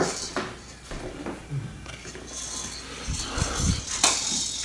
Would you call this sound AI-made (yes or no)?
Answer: no